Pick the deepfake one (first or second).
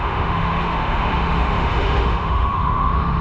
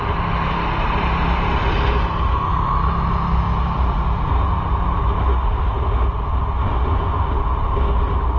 first